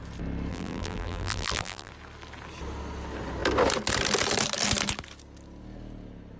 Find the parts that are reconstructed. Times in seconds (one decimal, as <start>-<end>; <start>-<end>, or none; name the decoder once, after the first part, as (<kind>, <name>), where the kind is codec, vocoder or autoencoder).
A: 0.5-1.9 (vocoder, BigVGAN v2)